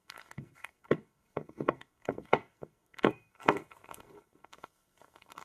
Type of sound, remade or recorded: remade